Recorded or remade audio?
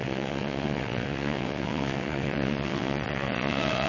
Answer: remade